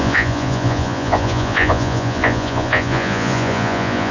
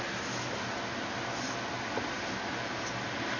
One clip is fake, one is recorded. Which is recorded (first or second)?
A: second